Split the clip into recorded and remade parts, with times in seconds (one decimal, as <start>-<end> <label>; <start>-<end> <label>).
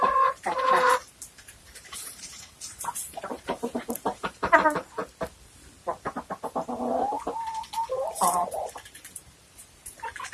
0.0-5.0 remade; 5.0-8.1 recorded; 8.1-10.3 remade